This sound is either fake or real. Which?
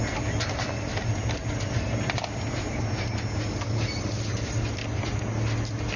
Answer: real